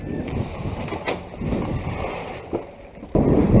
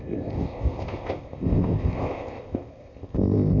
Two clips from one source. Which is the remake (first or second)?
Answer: second